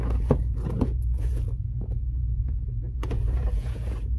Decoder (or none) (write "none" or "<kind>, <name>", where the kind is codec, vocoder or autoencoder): vocoder, Vocos